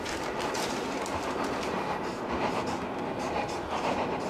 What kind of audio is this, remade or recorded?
recorded